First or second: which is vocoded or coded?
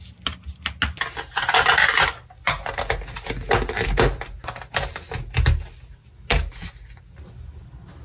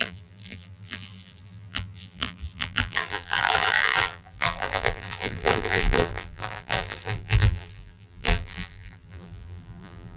second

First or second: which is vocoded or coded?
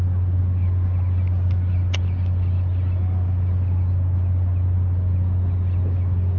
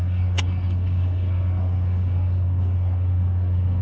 second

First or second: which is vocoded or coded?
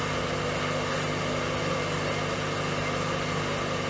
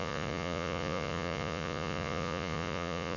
second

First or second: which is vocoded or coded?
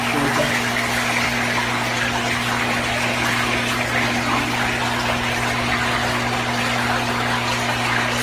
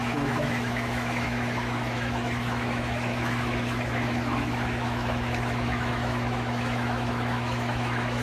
second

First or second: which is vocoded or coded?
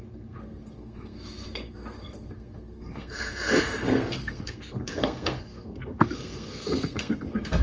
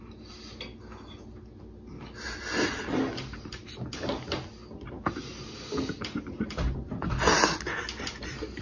first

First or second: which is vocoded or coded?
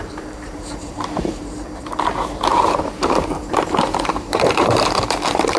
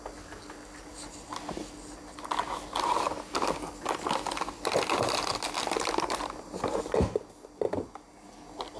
first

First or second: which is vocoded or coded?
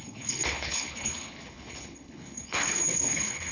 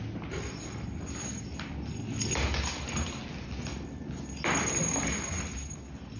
first